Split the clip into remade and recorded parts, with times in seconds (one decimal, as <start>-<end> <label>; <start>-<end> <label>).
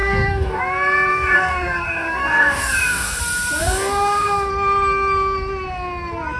0.0-0.6 remade; 0.6-1.1 recorded; 1.1-3.2 remade; 3.2-3.6 recorded; 3.6-4.5 remade; 4.5-6.4 recorded